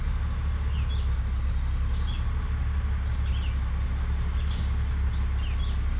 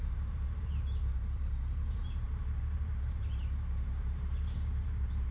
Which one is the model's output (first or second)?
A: second